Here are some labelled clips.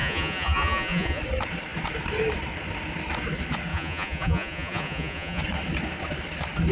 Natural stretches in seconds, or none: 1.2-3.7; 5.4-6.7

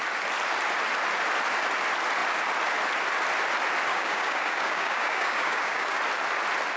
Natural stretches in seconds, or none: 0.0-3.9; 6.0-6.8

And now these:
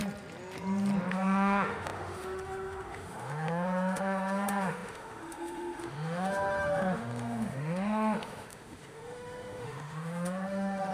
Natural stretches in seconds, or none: 0.0-1.1

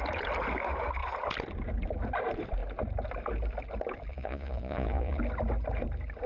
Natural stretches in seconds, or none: 0.0-4.1; 5.2-6.3

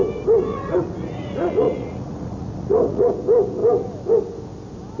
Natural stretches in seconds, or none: 0.0-0.5; 3.1-5.0